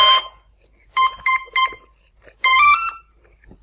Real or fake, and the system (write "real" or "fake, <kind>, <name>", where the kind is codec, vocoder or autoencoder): fake, vocoder, BigVGAN v2